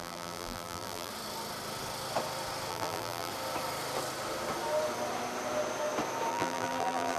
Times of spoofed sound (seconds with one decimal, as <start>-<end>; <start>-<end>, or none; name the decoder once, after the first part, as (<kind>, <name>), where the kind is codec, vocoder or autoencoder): 0.0-1.1 (vocoder, BigVGAN v2); 2.7-3.3; 6.3-7.2